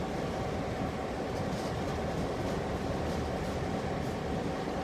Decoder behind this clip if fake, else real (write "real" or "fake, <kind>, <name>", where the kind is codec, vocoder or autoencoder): real